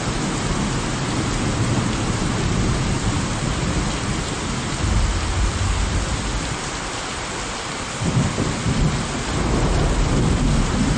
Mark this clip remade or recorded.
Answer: recorded